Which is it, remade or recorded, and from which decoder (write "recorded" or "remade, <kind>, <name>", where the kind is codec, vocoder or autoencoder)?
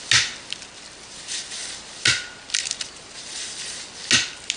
recorded